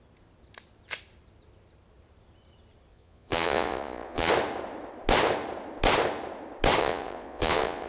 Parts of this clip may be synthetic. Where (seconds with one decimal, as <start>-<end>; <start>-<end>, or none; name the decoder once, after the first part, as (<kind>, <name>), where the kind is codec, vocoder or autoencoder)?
2.9-4.3 (vocoder, Vocos); 6.8-7.9